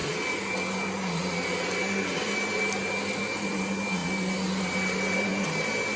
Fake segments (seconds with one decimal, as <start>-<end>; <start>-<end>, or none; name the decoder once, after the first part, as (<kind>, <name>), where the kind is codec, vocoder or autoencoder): none